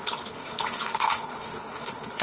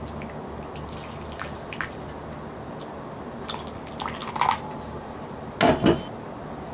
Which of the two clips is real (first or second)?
second